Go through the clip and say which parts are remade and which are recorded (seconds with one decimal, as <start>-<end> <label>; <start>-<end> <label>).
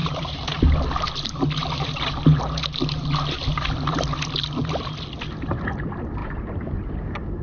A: 0.0-0.6 remade; 0.6-6.2 recorded; 6.2-7.0 remade; 7.0-7.4 recorded